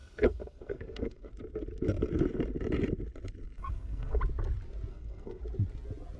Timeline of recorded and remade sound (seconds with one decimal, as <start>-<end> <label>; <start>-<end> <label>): 0.0-1.3 remade; 1.3-3.4 recorded; 3.4-4.2 remade; 4.2-4.9 recorded; 4.9-5.4 remade; 5.4-6.2 recorded